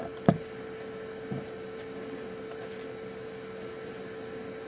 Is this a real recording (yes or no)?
yes